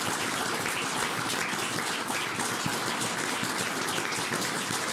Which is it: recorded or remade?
recorded